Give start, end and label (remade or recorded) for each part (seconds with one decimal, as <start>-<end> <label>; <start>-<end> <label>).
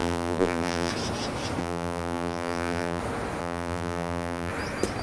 0.0-0.9 remade; 0.9-1.6 recorded; 1.6-3.0 remade; 3.0-3.4 recorded; 3.4-4.5 remade; 4.5-5.0 recorded